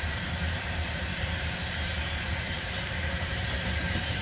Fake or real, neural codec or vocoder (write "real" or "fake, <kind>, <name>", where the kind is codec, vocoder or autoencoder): fake, vocoder, BigVGAN v2